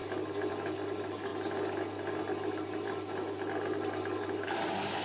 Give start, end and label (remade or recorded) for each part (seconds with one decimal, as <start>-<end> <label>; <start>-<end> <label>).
0.0-5.0 recorded

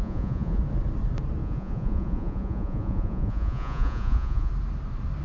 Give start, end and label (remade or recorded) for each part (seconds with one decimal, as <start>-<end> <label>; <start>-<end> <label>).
0.0-0.6 remade; 0.6-1.4 recorded; 1.4-4.5 remade; 4.5-5.2 recorded

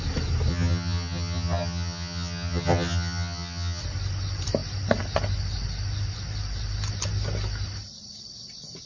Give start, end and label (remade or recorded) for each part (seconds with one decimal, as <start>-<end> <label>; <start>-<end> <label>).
0.0-0.5 recorded; 0.5-3.8 remade; 3.8-8.9 recorded

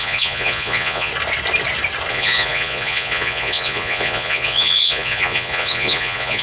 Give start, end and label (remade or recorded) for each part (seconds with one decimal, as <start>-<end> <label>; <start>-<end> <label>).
0.0-1.1 remade; 1.1-2.1 recorded; 2.1-6.4 remade

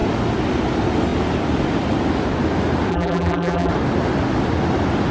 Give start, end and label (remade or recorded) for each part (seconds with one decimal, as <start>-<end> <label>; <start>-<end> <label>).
0.0-2.9 recorded; 2.9-3.7 remade; 3.7-5.1 recorded

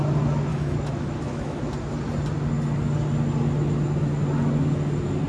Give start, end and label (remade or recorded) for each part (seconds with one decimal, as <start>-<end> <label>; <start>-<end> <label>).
0.0-0.5 recorded; 0.5-1.6 remade; 1.6-5.3 recorded